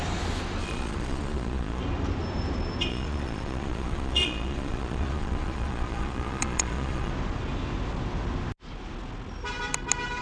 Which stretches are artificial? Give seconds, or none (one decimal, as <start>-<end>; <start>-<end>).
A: 0.6-1.8; 2.9-7.1

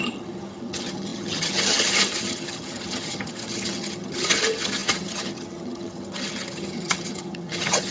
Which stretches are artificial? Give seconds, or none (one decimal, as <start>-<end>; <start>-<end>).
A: 0.0-7.9

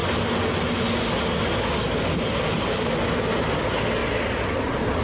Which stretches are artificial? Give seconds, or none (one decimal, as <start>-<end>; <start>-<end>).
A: none

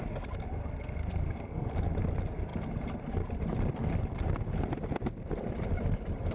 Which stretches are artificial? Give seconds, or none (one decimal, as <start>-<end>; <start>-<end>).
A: 1.0-1.7

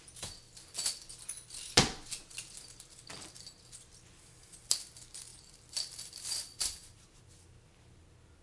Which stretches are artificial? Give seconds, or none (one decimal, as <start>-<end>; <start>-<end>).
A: 5.3-7.2

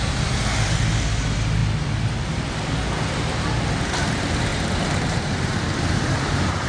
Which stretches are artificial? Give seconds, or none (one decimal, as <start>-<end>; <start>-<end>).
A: 4.5-6.7

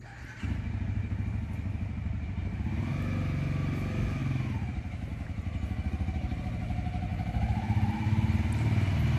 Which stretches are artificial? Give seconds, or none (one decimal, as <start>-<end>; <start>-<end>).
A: none